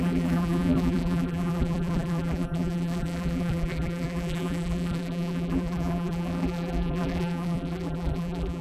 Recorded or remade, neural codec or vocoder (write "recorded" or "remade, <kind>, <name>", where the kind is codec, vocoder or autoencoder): remade, vocoder, BigVGAN v2